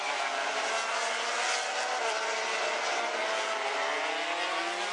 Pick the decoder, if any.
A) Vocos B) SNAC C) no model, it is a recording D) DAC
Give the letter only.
C